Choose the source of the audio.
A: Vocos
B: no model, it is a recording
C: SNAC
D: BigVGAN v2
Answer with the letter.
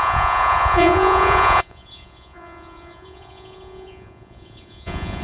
A